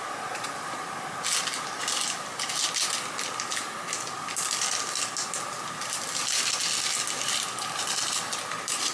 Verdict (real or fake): real